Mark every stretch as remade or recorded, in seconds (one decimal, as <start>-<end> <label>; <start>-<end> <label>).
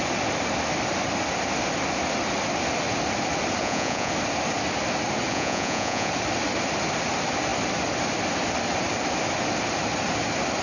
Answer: 0.0-3.6 recorded; 3.6-4.1 remade; 4.1-5.3 recorded; 5.3-6.1 remade; 6.1-10.6 recorded